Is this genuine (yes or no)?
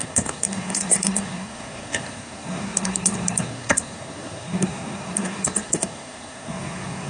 no